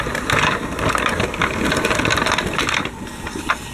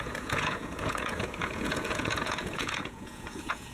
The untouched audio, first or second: first